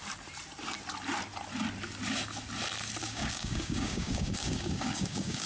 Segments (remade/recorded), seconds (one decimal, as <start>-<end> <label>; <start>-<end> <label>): 0.0-3.0 recorded; 3.0-5.5 remade